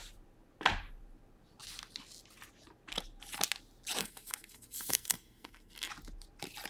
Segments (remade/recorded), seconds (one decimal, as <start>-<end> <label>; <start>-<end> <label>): 0.0-4.0 recorded; 4.0-5.9 remade; 5.9-6.7 recorded